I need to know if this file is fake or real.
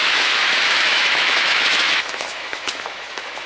fake